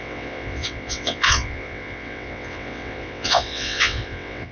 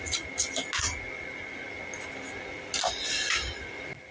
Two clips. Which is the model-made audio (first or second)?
first